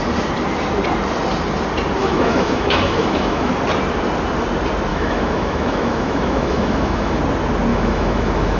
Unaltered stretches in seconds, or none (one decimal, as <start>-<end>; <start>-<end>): 0.0-2.0; 3.5-4.9; 7.2-7.7